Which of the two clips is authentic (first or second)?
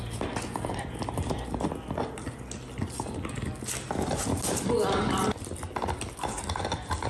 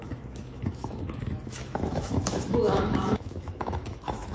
first